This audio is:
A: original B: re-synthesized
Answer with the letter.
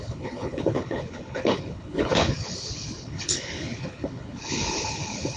B